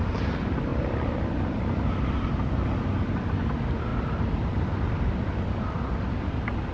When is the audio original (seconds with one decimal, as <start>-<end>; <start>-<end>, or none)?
0.0-6.7